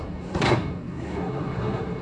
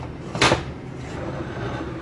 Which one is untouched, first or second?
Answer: second